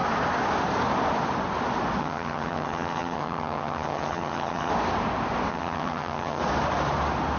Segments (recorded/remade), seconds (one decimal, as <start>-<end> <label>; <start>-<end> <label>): 0.0-2.0 recorded; 2.0-4.7 remade; 4.7-5.5 recorded; 5.5-6.4 remade; 6.4-7.4 recorded